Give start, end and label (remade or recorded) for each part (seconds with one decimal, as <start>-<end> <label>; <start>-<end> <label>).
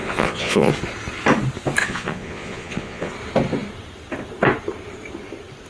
0.0-0.7 remade; 0.7-1.8 recorded; 1.8-3.1 remade; 3.1-5.7 recorded